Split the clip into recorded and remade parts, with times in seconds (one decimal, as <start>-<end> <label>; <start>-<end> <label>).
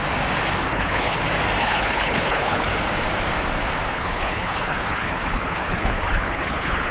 0.0-0.7 recorded; 0.7-1.2 remade; 1.2-1.6 recorded; 1.6-2.7 remade; 2.7-3.9 recorded; 3.9-6.9 remade